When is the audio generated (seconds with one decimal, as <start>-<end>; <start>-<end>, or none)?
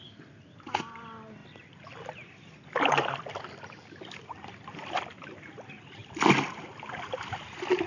none